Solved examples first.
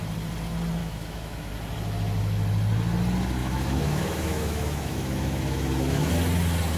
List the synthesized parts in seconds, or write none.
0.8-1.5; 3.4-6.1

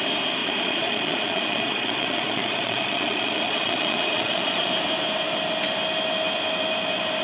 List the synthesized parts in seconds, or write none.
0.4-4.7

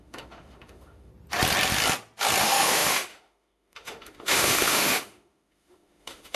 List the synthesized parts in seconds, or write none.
0.0-1.1; 2.4-6.4

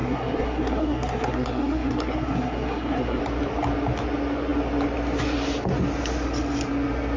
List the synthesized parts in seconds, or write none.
0.0-3.2